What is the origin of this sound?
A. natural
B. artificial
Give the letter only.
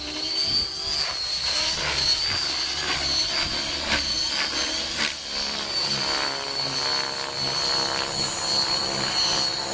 A